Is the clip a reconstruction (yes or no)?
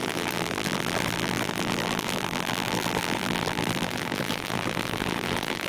yes